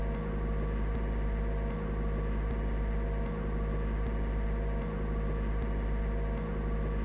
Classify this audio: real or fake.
real